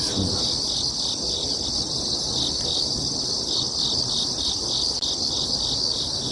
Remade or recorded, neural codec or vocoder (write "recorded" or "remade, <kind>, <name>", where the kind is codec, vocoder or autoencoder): recorded